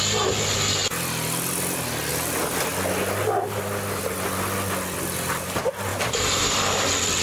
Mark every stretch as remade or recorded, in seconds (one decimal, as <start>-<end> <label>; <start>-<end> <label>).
0.0-5.9 recorded; 5.9-6.8 remade; 6.8-7.2 recorded